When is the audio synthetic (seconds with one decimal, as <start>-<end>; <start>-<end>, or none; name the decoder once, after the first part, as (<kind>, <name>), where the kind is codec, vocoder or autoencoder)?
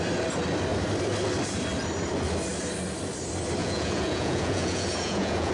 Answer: 3.6-5.5 (vocoder, Vocos)